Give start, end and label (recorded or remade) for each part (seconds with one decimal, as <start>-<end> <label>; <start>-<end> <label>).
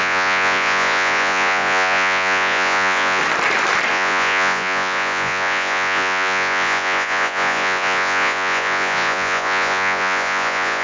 0.0-3.2 remade; 3.2-3.9 recorded; 3.9-10.8 remade